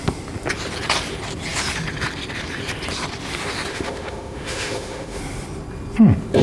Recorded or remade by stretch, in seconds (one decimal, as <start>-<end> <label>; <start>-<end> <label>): 0.0-3.7 recorded; 3.7-5.2 remade; 5.2-6.4 recorded